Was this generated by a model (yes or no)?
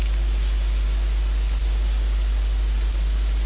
no